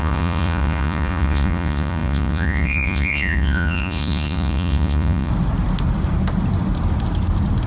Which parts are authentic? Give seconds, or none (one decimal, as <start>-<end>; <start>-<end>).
5.3-7.7